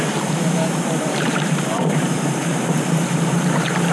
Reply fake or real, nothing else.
fake